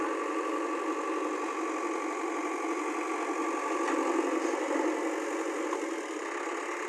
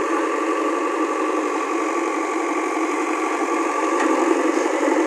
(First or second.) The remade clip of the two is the second